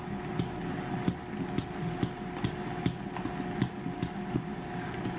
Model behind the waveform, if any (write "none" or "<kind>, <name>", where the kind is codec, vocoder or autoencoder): none